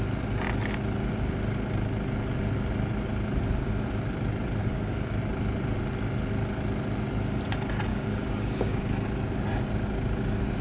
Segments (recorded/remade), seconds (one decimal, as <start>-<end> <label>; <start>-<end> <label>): 0.0-4.6 recorded; 4.6-5.1 remade; 5.1-7.9 recorded; 7.9-8.8 remade; 8.8-10.6 recorded